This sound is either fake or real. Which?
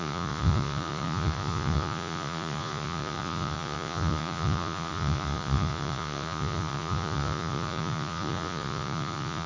fake